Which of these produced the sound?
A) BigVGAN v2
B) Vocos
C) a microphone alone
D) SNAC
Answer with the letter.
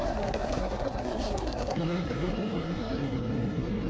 D